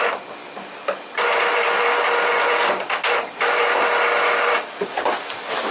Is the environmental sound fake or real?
real